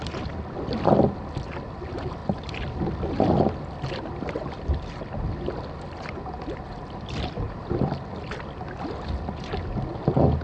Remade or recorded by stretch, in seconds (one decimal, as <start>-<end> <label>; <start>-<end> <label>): 0.0-10.4 recorded